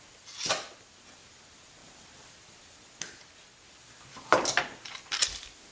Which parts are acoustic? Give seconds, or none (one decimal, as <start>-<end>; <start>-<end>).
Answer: 0.0-5.7